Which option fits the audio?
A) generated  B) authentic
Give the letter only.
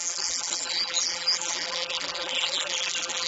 A